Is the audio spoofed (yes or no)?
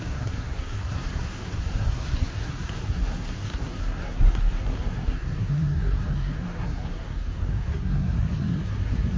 yes